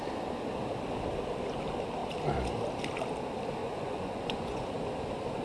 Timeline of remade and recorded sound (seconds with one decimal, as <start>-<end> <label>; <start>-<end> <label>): 0.0-3.6 recorded; 3.6-4.8 remade; 4.8-5.4 recorded